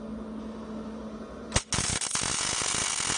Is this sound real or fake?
real